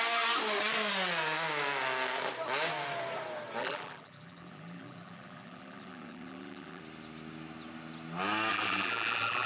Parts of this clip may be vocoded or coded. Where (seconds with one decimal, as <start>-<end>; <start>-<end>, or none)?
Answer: 3.6-6.8; 8.5-9.5